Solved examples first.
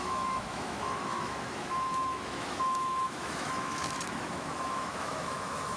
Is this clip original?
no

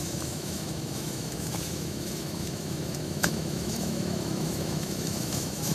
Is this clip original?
no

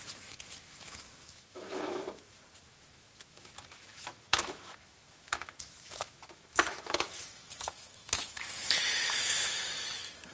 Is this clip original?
no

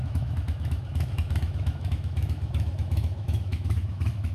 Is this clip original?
no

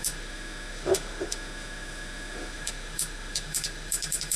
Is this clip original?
no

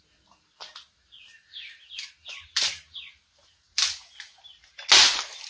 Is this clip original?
yes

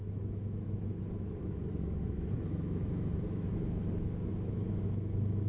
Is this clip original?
no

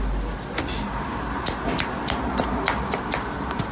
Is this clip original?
yes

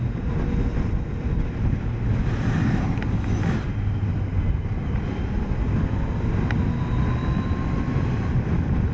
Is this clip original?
yes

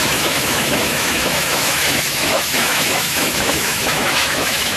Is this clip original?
no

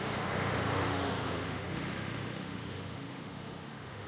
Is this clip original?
no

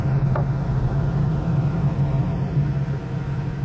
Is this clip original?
yes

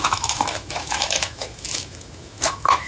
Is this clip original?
no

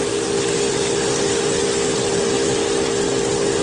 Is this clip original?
yes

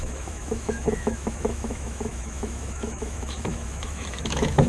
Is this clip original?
no